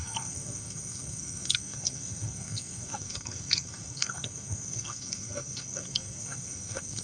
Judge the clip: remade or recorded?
remade